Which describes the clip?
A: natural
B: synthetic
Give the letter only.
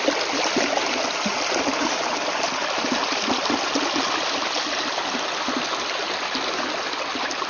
A